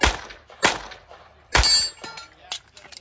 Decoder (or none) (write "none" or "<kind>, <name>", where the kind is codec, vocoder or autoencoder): none